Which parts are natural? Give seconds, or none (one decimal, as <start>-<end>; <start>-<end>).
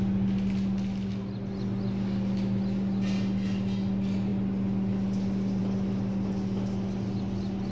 0.0-7.7